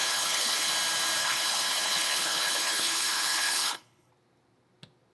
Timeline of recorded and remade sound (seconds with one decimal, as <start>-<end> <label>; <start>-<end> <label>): 0.0-0.7 remade; 0.7-1.2 recorded; 1.2-4.1 remade; 4.1-5.1 recorded

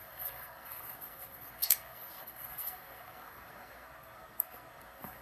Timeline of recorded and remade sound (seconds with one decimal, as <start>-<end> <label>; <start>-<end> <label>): 0.0-5.2 remade